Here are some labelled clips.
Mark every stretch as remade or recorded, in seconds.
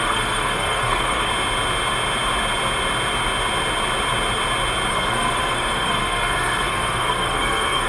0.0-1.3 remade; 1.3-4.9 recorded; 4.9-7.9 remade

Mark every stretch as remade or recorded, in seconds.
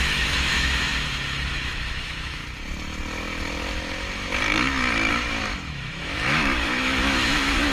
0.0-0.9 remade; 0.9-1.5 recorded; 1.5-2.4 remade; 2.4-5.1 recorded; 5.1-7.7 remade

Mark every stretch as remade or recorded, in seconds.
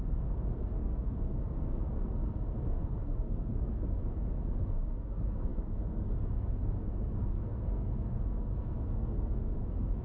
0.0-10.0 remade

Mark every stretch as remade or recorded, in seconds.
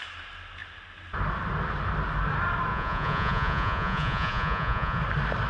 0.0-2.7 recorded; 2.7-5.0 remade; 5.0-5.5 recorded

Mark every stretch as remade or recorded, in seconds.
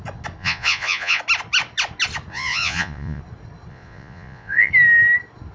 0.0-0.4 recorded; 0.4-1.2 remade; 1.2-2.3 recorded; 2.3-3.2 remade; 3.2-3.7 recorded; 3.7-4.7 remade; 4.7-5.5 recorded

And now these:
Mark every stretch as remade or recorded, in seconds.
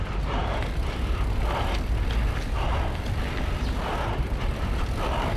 0.0-5.4 recorded